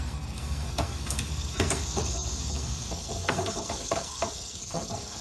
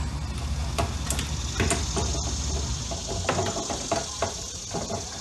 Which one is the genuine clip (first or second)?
second